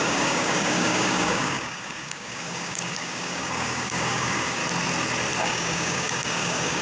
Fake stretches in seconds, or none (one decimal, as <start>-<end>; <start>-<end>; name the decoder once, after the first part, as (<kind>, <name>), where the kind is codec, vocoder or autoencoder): 0.0-4.6 (codec, DAC); 5.4-6.8